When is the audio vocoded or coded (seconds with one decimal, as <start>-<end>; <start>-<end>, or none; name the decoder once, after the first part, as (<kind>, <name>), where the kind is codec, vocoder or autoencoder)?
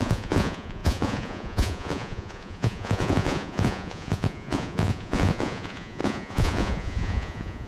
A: 0.0-7.7 (vocoder, Vocos)